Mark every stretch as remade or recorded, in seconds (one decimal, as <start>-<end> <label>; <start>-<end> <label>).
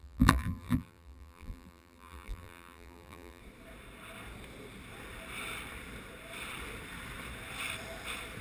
0.0-3.4 remade; 3.4-8.4 recorded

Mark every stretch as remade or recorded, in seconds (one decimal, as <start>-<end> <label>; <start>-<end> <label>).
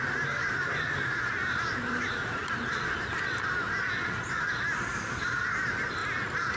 0.0-2.4 remade; 2.4-4.8 recorded; 4.8-6.0 remade; 6.0-6.6 recorded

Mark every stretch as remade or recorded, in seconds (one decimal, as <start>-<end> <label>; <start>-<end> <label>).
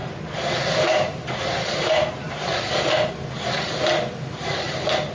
0.0-3.1 remade; 3.1-5.1 recorded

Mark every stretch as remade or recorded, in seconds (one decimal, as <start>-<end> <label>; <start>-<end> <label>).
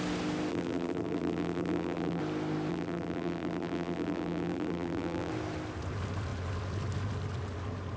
0.0-0.5 recorded; 0.5-2.2 remade; 2.2-2.7 recorded; 2.7-5.3 remade; 5.3-8.0 recorded